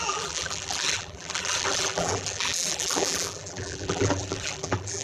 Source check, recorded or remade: remade